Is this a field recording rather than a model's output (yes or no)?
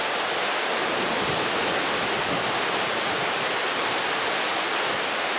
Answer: yes